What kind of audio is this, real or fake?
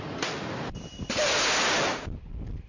real